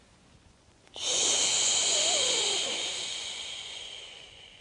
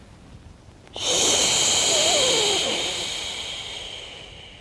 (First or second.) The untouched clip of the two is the second